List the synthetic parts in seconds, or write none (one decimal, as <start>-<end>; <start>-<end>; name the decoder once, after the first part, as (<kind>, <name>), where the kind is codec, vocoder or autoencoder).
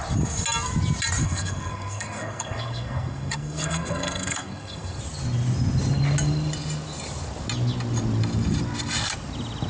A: 1.2-5.0 (codec, SNAC)